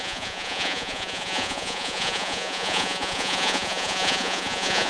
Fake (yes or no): yes